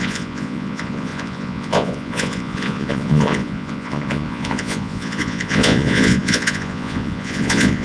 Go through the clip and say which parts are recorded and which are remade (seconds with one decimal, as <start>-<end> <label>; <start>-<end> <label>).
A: 0.0-7.8 remade